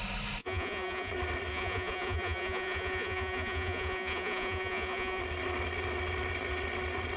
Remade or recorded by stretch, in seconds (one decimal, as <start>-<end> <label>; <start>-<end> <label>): 0.0-0.4 recorded; 0.4-1.1 remade; 1.1-1.5 recorded; 1.5-5.2 remade; 5.2-7.2 recorded